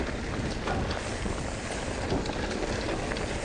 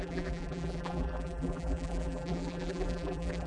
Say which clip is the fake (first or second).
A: second